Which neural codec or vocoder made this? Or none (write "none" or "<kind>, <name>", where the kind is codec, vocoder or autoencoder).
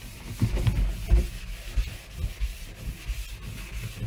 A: none